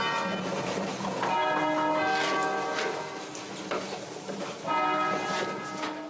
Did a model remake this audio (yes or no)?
no